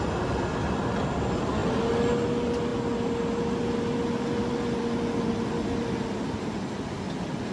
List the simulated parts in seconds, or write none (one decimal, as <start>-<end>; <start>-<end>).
none